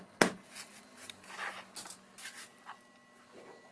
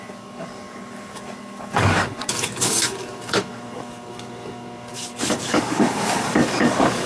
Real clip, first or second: first